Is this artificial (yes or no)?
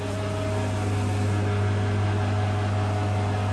no